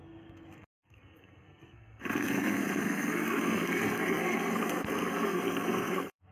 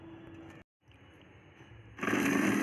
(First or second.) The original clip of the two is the second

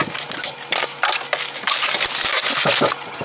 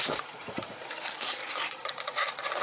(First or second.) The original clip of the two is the first